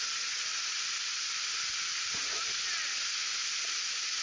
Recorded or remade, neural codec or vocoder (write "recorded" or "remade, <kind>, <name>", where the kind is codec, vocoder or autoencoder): recorded